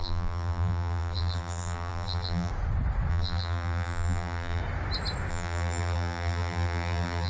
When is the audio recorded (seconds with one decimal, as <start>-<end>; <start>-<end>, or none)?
2.5-3.1; 4.6-5.3